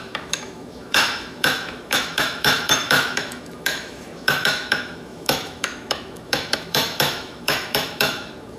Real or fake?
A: fake